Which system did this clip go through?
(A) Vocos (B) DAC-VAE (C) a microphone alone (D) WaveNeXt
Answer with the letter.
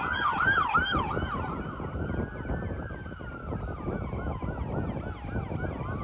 C